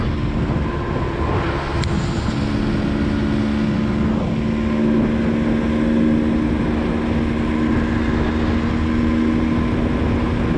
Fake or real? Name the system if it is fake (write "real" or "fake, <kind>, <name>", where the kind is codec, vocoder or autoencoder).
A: real